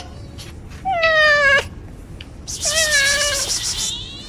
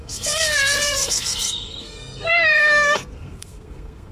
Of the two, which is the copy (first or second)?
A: second